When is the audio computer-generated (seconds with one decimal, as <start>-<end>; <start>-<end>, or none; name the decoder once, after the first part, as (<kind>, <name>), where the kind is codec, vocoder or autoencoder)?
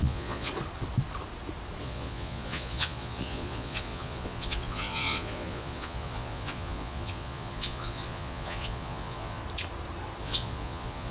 0.0-0.5 (vocoder, Vocos); 1.8-9.4; 10.2-11.1